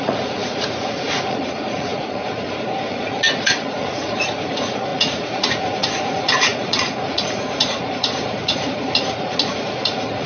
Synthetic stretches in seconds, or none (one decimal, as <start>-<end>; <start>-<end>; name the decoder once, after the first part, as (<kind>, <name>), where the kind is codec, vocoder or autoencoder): 0.0-10.3 (vocoder, Vocos)